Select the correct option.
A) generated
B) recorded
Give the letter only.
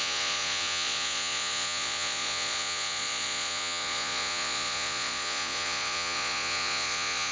A